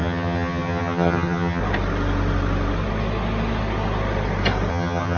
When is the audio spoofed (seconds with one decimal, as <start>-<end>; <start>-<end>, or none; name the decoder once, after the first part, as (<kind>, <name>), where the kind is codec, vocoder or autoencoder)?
0.0-1.6 (vocoder, HiFi-GAN); 4.7-5.2